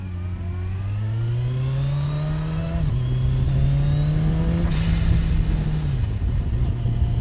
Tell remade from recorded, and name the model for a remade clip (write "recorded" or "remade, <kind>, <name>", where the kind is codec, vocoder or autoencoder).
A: recorded